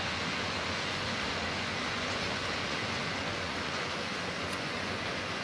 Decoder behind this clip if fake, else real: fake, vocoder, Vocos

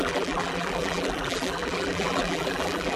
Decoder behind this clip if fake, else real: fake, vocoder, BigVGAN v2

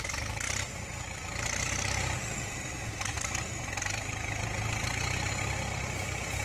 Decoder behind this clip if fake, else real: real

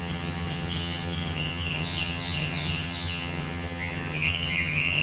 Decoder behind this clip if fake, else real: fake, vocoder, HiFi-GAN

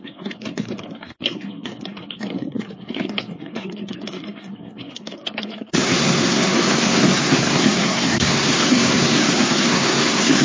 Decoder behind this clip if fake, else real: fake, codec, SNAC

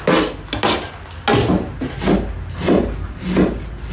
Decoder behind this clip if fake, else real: real